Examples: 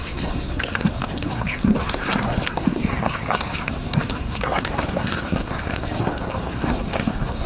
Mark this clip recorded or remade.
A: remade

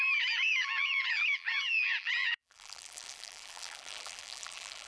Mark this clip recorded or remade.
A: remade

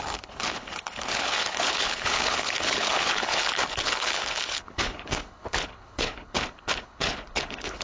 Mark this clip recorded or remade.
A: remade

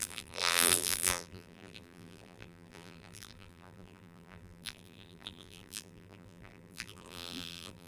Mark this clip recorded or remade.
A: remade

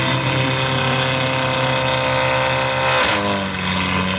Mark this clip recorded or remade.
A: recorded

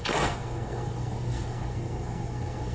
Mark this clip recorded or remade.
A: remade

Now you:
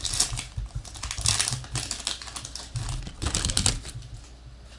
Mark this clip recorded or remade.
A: recorded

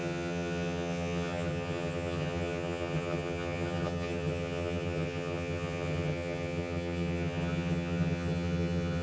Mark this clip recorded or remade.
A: remade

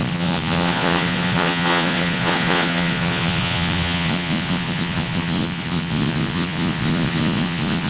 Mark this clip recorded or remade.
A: remade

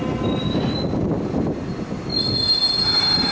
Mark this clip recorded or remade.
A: recorded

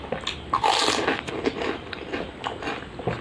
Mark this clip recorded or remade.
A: recorded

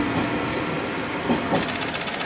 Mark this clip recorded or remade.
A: recorded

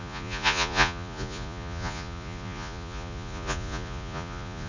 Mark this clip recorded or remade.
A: remade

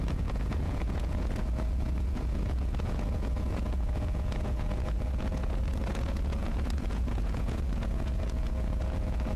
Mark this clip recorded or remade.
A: remade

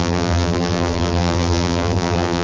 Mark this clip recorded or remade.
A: remade